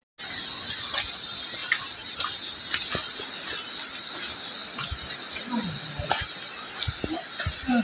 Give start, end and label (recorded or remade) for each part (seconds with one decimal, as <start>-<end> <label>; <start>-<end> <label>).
0.0-7.8 recorded